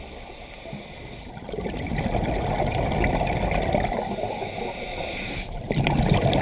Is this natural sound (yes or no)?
yes